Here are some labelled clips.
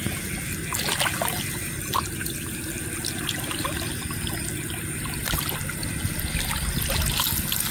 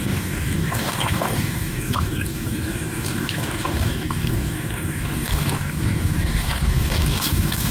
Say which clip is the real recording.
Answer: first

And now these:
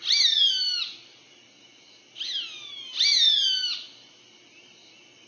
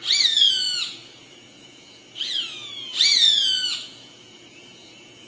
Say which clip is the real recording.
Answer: first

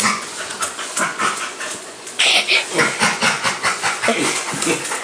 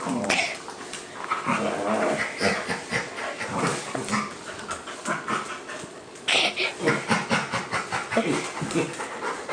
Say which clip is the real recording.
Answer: second